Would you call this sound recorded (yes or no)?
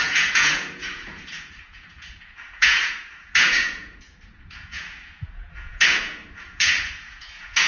no